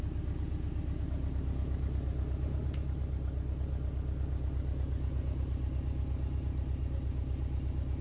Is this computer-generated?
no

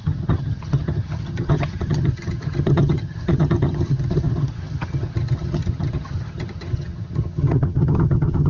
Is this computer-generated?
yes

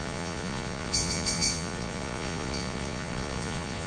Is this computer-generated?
yes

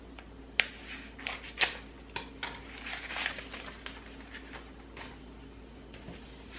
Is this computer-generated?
no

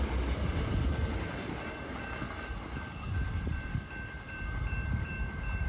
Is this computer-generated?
yes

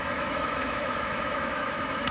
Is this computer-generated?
yes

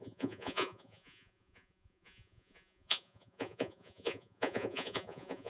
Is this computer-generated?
yes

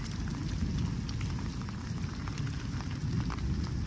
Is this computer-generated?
no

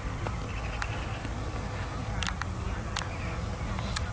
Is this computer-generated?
no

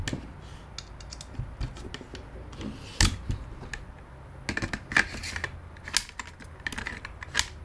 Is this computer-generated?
no